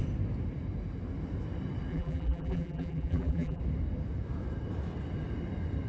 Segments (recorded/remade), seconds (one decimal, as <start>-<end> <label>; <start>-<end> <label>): 0.0-1.9 recorded; 1.9-3.6 remade; 3.6-5.9 recorded